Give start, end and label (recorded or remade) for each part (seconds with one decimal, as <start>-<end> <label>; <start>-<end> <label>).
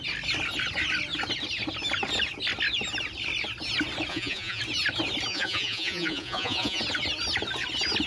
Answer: 0.0-4.1 recorded; 4.1-4.6 remade; 4.6-5.3 recorded; 5.3-6.8 remade; 6.8-8.1 recorded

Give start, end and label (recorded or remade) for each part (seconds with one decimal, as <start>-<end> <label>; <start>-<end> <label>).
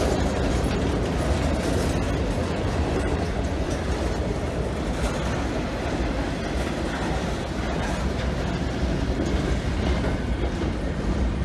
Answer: 0.0-2.4 recorded; 2.4-3.7 remade; 3.7-11.4 recorded